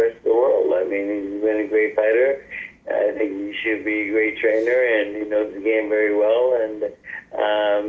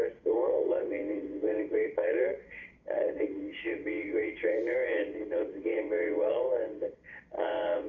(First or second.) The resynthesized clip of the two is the second